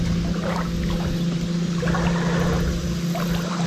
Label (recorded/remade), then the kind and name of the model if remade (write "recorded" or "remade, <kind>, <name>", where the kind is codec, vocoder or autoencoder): recorded